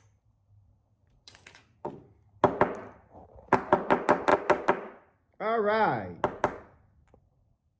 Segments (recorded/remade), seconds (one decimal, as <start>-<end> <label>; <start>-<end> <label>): 0.0-1.0 recorded; 1.0-1.9 remade; 1.9-7.8 recorded